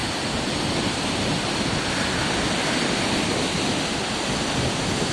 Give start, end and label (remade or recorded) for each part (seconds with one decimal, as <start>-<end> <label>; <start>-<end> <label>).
0.0-5.1 recorded